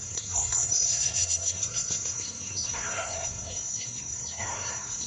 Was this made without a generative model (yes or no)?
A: no